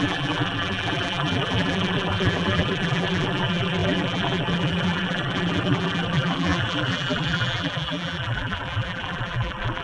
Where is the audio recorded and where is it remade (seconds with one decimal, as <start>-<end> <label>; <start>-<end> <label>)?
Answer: 0.0-9.8 remade